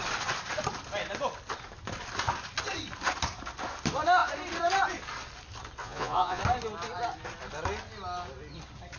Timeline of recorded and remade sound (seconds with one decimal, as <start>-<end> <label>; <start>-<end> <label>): 0.0-5.8 recorded; 5.8-6.4 remade; 6.4-9.0 recorded